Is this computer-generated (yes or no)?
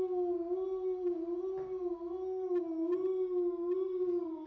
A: no